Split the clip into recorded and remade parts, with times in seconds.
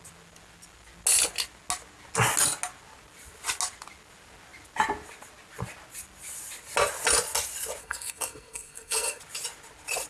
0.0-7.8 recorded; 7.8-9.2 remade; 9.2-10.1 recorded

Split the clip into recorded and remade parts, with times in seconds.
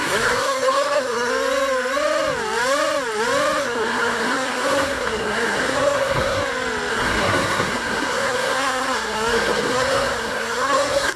0.0-1.3 remade; 1.3-3.6 recorded; 3.6-6.4 remade; 6.4-6.9 recorded; 6.9-11.2 remade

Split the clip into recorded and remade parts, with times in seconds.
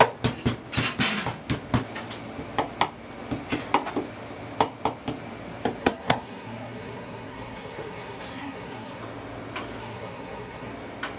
0.0-5.8 recorded; 5.8-9.0 remade; 9.0-9.8 recorded; 9.8-10.7 remade; 10.7-11.2 recorded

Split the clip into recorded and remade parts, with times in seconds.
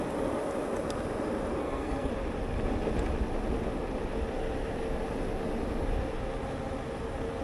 0.0-1.6 recorded; 1.6-2.1 remade; 2.1-7.4 recorded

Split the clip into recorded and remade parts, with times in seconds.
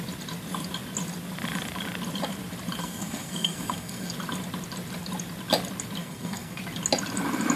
0.0-2.8 recorded; 2.8-4.1 remade; 4.1-6.0 recorded; 6.0-6.6 remade; 6.6-7.6 recorded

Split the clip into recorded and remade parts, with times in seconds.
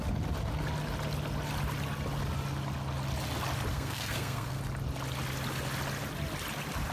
0.0-3.7 recorded; 3.7-4.6 remade; 4.6-6.9 recorded